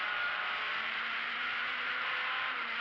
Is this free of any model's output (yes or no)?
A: no